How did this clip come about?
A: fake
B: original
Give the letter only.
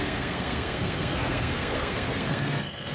A